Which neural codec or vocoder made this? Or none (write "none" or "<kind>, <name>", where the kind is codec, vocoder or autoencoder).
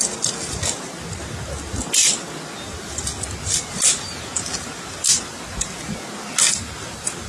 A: none